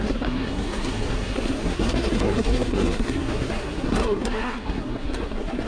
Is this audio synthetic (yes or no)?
yes